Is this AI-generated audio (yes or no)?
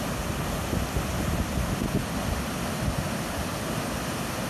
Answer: no